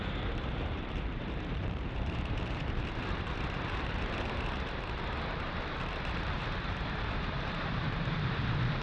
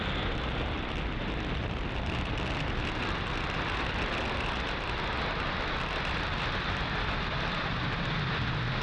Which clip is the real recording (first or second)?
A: second